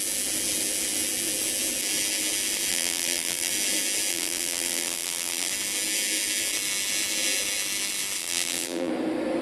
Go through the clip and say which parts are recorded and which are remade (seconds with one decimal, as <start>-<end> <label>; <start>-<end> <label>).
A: 0.0-2.7 recorded; 2.7-3.5 remade; 3.5-4.1 recorded; 4.1-5.5 remade; 5.5-8.2 recorded; 8.2-8.9 remade; 8.9-9.4 recorded